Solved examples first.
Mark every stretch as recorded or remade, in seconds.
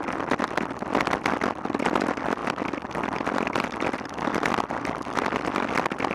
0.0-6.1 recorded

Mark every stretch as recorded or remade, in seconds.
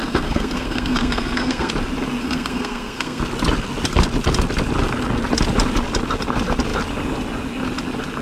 0.0-1.7 remade; 1.7-2.2 recorded; 2.2-3.2 remade; 3.2-8.2 recorded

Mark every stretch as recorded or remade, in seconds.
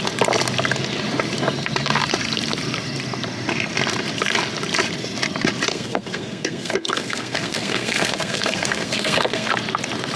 0.0-5.7 recorded; 5.7-9.5 remade; 9.5-10.2 recorded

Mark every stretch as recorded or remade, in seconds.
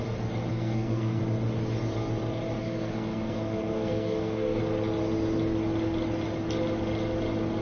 0.0-0.5 recorded; 0.5-1.2 remade; 1.2-2.6 recorded; 2.6-4.6 remade; 4.6-7.6 recorded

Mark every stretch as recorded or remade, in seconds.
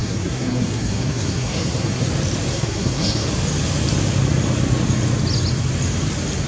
0.0-2.1 remade; 2.1-2.5 recorded; 2.5-3.3 remade; 3.3-6.5 recorded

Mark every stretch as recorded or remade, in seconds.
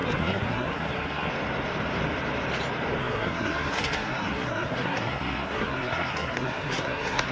0.0-1.3 remade; 1.3-3.0 recorded; 3.0-7.3 remade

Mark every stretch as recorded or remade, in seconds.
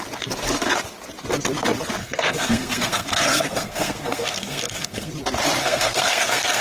0.0-2.0 recorded; 2.0-5.1 remade; 5.1-5.6 recorded; 5.6-6.6 remade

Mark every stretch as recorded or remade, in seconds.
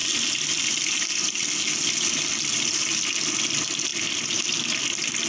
0.0-5.3 recorded